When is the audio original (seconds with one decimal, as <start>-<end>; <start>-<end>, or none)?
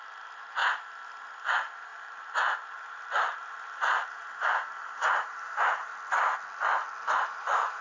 0.6-1.2; 5.9-7.2